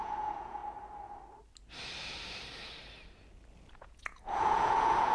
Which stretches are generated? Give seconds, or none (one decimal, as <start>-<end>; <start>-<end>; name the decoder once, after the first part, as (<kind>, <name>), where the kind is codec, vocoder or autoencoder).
0.0-0.6 (vocoder, Vocos); 3.7-5.1